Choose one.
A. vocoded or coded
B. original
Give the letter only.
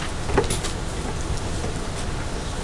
B